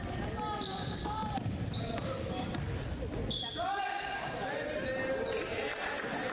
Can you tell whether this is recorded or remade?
recorded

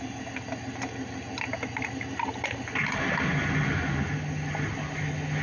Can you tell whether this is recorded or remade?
recorded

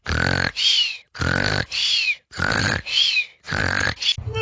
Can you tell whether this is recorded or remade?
recorded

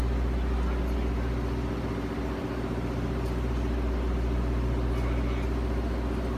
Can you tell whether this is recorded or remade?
recorded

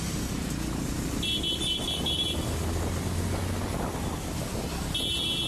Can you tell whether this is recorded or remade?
recorded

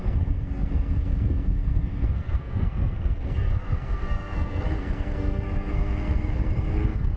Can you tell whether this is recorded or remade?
remade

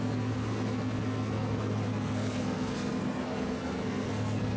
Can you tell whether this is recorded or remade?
remade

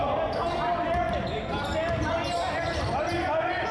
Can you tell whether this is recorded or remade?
recorded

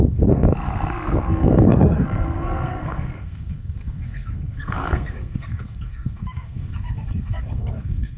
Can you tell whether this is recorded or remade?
remade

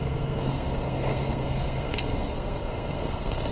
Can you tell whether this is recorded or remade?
remade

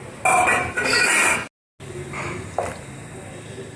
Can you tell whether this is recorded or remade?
recorded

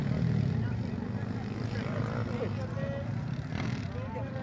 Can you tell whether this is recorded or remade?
recorded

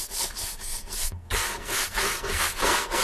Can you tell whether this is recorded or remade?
remade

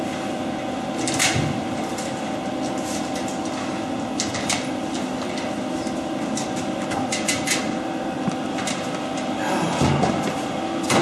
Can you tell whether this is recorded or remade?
recorded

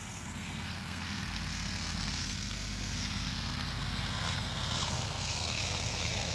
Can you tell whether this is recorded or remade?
remade